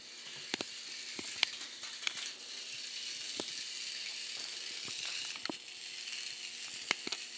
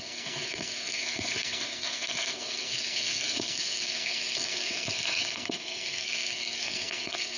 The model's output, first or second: second